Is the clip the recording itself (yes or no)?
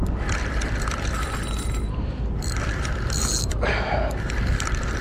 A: no